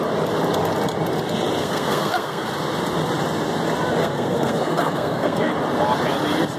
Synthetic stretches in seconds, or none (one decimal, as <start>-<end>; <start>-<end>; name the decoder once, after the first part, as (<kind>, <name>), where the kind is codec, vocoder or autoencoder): 1.6-2.4 (codec, SNAC); 4.0-5.5